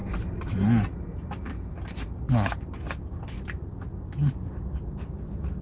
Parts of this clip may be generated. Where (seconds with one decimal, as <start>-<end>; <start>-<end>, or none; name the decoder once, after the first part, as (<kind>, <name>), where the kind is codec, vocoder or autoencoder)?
none